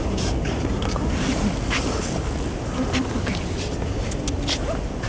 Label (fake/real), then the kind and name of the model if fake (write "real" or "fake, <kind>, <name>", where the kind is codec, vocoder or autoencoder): real